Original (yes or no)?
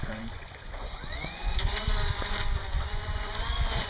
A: no